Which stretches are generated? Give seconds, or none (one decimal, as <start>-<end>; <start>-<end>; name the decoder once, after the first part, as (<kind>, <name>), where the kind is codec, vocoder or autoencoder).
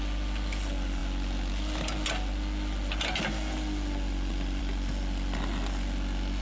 none